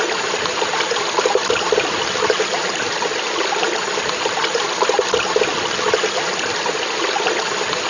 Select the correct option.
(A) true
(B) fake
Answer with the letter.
A